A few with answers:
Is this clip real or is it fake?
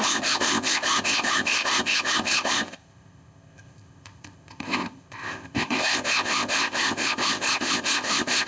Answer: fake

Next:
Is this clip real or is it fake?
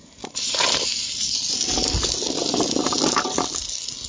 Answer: real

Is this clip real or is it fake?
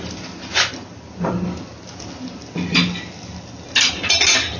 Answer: real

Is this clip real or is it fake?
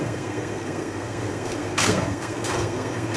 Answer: fake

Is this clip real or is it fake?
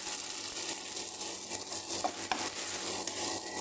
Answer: real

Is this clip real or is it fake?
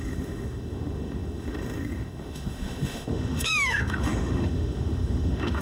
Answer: fake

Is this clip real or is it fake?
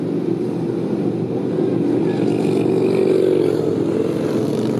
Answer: real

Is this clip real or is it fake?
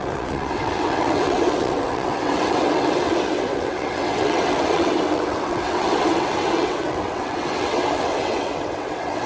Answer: fake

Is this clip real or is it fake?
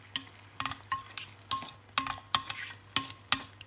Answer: real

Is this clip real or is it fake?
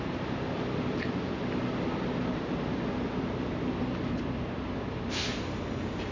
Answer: real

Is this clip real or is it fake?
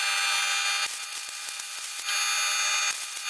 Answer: real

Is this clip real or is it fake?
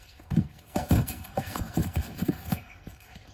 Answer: fake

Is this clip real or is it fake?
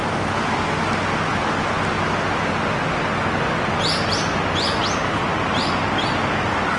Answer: real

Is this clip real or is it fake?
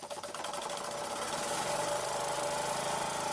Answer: real